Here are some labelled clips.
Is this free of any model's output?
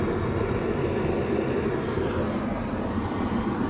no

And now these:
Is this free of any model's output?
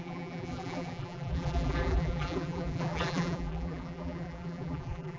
no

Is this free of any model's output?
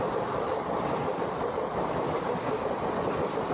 no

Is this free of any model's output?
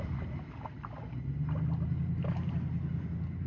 yes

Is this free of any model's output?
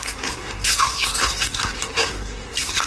no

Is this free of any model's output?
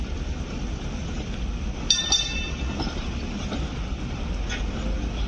yes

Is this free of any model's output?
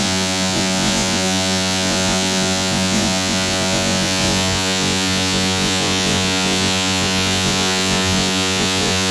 no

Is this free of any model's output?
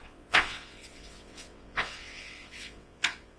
no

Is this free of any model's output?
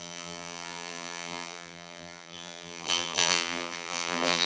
no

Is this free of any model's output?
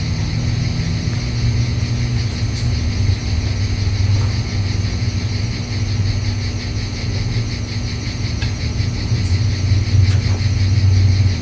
yes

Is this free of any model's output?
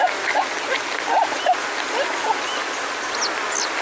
yes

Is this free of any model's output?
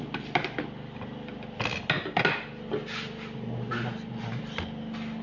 yes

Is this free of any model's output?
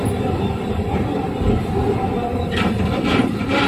yes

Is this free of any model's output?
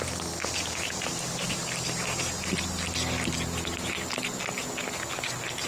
yes